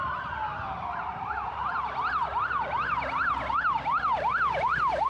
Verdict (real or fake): real